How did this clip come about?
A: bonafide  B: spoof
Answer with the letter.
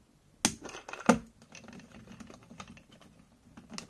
A